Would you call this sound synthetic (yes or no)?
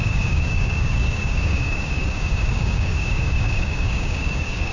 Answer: yes